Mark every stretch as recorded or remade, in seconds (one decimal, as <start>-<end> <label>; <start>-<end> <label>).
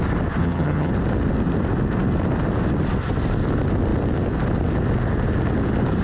0.0-0.4 recorded; 0.4-0.9 remade; 0.9-6.0 recorded